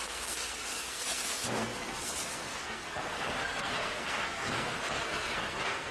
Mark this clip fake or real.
fake